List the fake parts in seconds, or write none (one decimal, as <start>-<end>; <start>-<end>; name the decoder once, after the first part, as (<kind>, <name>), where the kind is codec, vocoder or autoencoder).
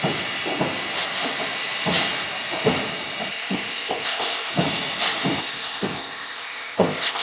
3.3-4.5 (codec, ZipCodec); 5.4-7.2